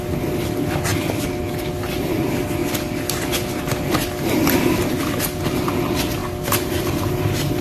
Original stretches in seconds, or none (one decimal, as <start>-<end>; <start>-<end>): 0.0-7.6